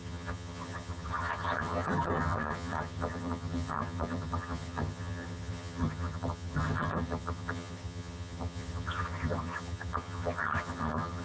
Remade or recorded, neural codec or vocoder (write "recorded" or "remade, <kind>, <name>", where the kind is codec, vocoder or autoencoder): remade, vocoder, HiFi-GAN